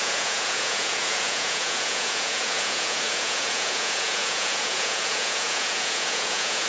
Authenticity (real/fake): fake